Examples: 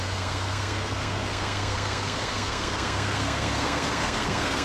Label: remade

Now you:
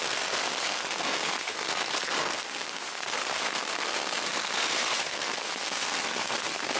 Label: remade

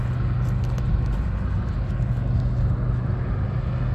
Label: recorded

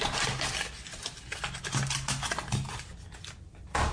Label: recorded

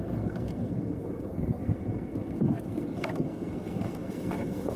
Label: remade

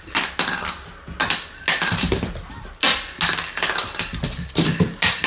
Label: recorded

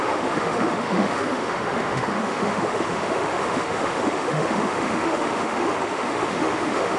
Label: remade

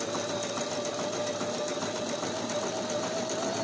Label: recorded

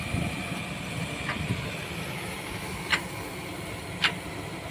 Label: recorded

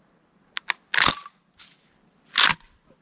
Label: recorded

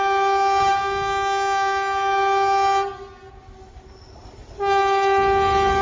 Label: recorded